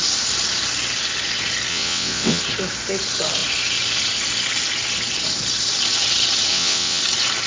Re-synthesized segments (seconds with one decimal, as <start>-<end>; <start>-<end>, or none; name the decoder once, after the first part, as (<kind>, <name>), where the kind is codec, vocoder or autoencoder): 1.7-2.4 (vocoder, WaveNeXt); 6.5-7.0